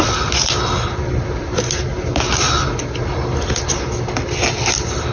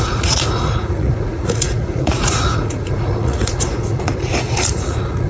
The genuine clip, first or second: first